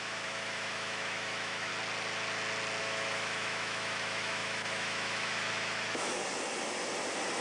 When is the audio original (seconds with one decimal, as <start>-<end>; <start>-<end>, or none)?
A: 1.7-2.8; 6.1-7.4